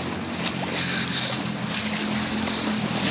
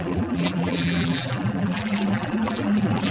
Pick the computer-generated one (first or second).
second